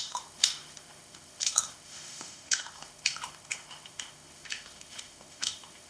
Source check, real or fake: fake